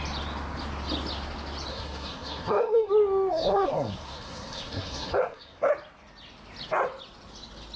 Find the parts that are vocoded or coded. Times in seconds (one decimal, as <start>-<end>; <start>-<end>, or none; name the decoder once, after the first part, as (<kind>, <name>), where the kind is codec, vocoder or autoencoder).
1.7-2.9 (codec, SNAC); 3.3-5.7